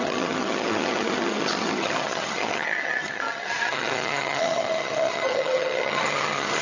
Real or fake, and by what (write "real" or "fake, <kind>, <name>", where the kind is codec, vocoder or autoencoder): fake, vocoder, HiFi-GAN